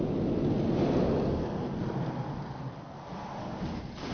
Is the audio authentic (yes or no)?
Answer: yes